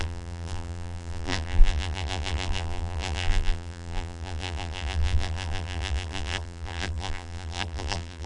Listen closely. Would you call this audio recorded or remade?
remade